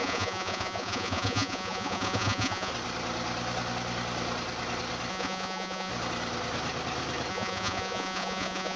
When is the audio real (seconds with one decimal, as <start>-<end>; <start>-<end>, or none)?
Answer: 2.7-5.1; 5.9-7.3